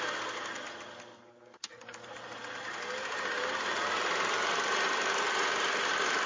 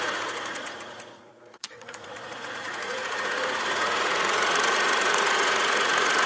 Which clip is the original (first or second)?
first